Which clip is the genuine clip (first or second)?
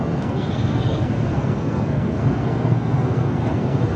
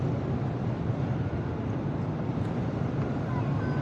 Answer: second